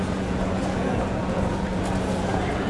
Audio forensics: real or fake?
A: fake